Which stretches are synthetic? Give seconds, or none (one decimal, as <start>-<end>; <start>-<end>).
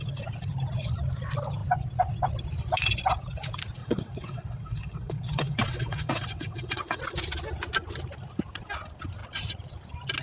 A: 3.8-7.0